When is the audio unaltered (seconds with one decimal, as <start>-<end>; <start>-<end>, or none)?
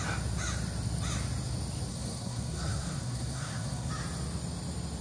0.0-1.9; 3.9-5.0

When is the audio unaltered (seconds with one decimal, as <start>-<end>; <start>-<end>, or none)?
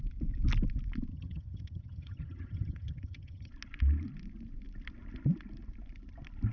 0.0-1.1; 3.5-6.5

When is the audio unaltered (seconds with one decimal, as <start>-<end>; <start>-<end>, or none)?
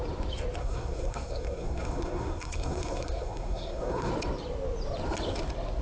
0.0-0.6; 4.1-5.8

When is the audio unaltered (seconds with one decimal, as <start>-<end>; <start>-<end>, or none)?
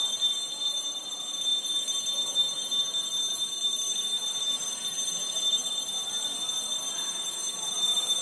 0.0-8.2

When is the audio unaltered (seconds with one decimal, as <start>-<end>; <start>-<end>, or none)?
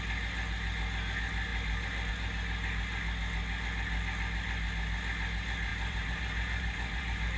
0.0-5.7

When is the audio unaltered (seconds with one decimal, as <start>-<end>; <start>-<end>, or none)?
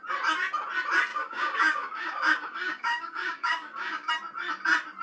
0.0-1.1; 4.1-5.0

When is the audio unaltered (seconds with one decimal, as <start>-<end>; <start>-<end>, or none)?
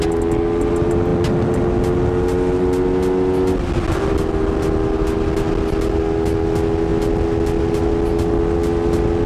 0.0-9.3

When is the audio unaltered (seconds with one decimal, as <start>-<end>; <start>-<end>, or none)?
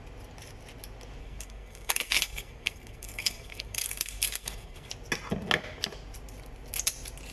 0.0-1.2; 4.9-7.3